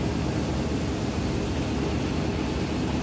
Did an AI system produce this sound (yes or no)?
no